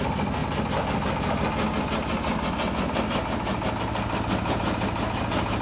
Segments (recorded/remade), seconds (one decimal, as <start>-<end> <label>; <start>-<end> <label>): 0.0-5.6 recorded